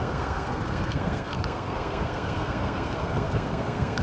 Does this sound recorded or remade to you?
remade